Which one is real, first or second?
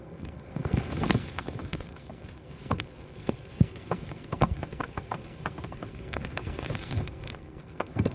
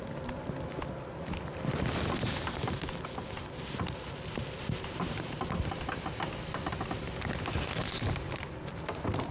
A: second